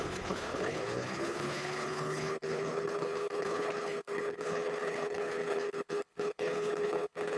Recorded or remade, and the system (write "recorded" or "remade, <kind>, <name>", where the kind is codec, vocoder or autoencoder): remade, codec, HILCodec